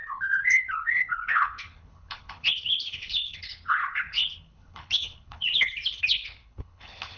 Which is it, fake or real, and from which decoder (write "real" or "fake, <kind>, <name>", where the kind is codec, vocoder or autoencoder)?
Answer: fake, codec, HILCodec